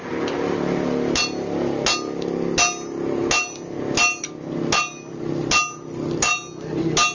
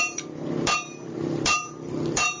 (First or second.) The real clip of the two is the first